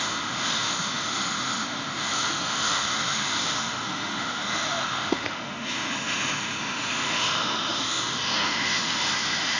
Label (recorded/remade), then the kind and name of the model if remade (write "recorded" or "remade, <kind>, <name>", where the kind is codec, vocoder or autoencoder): remade, autoencoder, DAC-VAE